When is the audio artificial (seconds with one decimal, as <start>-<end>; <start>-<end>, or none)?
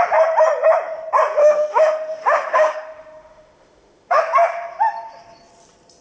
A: 1.4-4.2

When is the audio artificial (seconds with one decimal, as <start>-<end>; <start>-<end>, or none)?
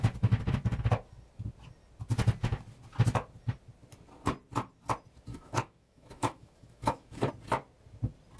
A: 5.3-7.3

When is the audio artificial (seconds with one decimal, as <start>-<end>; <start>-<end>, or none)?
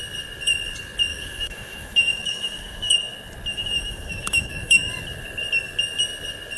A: 1.1-2.9; 3.5-4.9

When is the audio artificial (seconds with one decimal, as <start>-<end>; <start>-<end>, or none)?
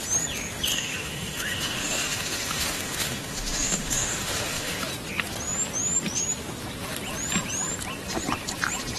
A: 0.7-4.8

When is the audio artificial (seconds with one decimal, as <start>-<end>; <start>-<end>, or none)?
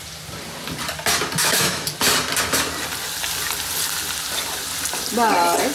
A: 1.4-1.9